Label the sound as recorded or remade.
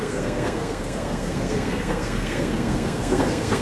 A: remade